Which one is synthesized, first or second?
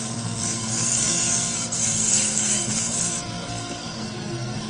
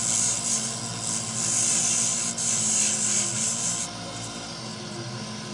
first